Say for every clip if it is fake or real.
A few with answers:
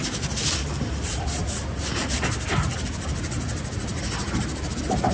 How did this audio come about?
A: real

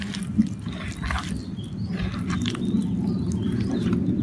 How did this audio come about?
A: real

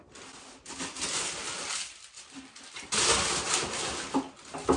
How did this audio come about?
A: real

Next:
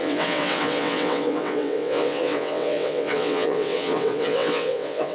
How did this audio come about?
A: fake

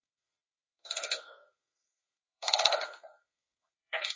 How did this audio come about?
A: fake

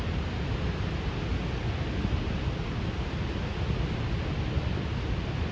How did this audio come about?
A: real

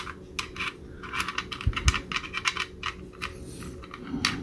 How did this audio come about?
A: real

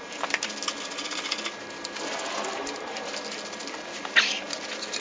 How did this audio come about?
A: real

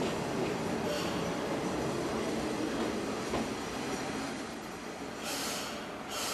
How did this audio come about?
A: real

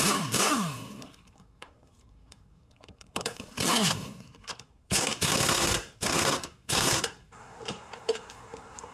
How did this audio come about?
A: fake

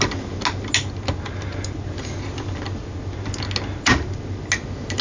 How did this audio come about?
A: real